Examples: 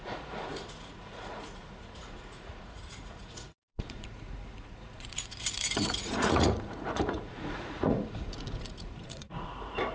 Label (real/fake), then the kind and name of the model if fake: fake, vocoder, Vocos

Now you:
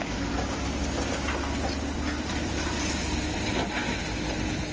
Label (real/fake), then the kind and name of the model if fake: real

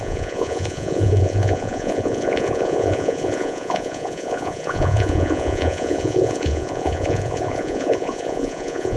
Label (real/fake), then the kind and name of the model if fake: fake, vocoder, Vocos